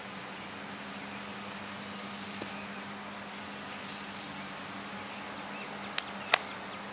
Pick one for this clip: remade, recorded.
recorded